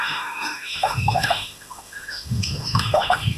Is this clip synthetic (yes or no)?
yes